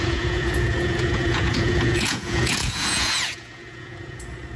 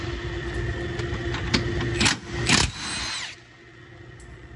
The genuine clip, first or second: second